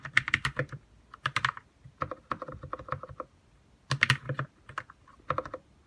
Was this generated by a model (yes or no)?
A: no